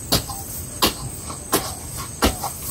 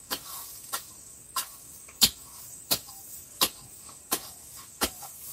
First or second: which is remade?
second